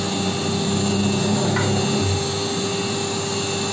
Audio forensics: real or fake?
real